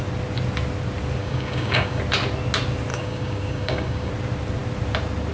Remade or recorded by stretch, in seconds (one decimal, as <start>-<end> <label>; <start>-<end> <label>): 0.0-1.2 recorded; 1.2-2.0 remade; 2.0-2.9 recorded; 2.9-4.1 remade; 4.1-5.3 recorded